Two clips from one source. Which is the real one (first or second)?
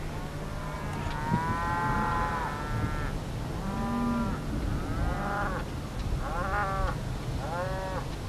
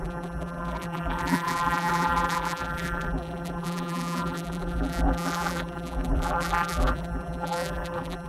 first